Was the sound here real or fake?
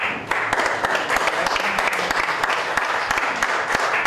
real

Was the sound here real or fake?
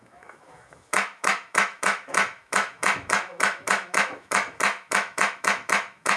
fake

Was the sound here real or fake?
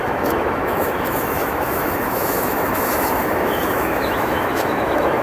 fake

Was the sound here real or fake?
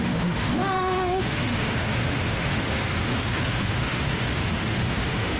fake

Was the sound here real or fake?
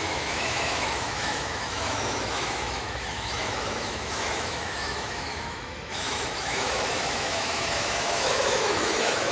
fake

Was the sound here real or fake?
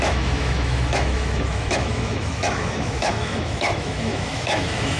fake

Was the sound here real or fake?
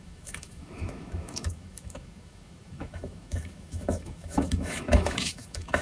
fake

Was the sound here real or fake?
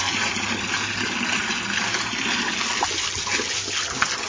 real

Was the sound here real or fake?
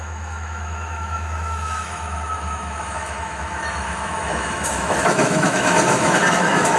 fake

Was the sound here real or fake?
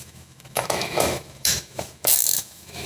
fake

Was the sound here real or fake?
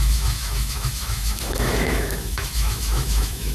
fake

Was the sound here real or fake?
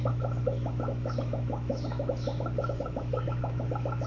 fake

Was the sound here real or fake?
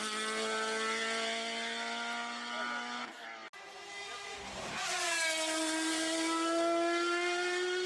real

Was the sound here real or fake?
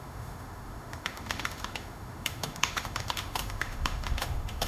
fake